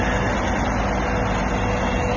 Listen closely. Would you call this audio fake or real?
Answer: real